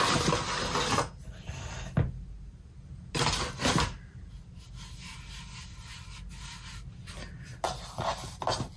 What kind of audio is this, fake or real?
real